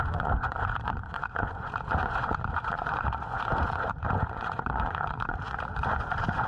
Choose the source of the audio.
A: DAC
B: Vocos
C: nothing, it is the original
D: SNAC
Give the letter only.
B